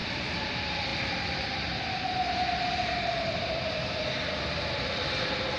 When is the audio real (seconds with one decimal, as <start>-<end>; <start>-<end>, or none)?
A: 0.5-5.6